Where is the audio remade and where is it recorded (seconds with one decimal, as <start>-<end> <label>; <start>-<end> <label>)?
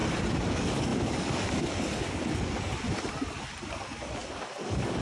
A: 0.0-0.5 recorded; 0.5-2.7 remade; 2.7-3.7 recorded; 3.7-5.0 remade